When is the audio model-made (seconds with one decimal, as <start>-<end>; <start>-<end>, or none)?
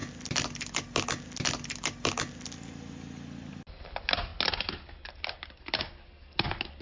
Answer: none